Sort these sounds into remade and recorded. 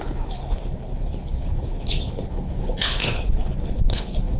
remade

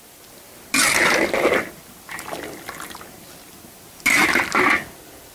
recorded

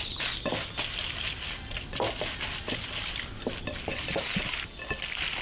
recorded